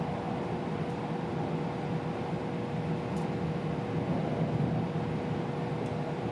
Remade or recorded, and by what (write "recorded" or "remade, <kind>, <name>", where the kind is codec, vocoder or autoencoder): recorded